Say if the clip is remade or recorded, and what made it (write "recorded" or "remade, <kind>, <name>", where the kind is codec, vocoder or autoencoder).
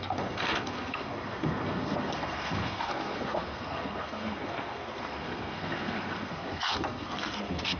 remade, codec, SNAC